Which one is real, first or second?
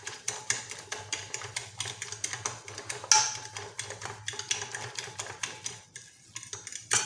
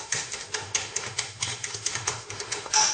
first